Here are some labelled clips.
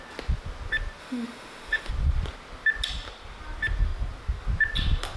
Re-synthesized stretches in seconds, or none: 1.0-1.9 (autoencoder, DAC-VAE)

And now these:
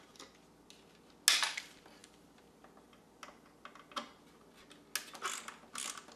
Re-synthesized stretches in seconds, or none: none

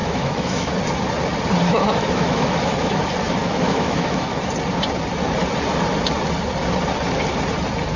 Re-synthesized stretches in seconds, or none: 0.0-0.7 (autoencoder, DAC-VAE); 1.7-3.0; 3.4-4.4